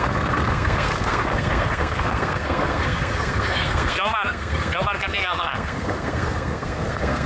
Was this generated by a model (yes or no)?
yes